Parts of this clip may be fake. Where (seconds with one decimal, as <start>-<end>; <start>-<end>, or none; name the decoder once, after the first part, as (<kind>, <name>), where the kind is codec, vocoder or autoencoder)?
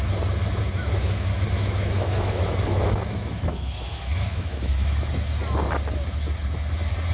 0.8-5.1 (autoencoder, DAC-VAE)